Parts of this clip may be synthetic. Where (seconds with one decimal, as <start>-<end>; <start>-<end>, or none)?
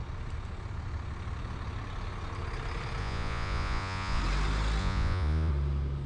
3.0-4.2; 4.8-5.5